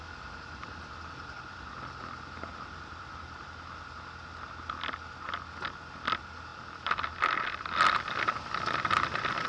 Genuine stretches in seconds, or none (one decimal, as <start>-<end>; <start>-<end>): 0.0-0.6; 2.0-2.5; 3.8-6.5